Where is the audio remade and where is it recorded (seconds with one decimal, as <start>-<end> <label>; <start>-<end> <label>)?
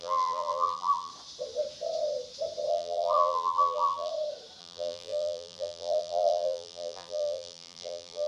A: 0.0-1.1 remade; 1.1-2.7 recorded; 2.7-4.1 remade; 4.1-4.6 recorded; 4.6-8.3 remade